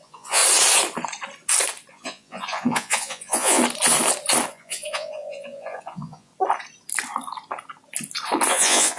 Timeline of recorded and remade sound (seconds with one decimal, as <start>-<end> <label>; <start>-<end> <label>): 0.0-0.4 remade; 0.4-1.9 recorded; 1.9-3.6 remade; 3.6-4.5 recorded; 4.5-6.3 remade; 6.3-8.5 recorded; 8.5-9.0 remade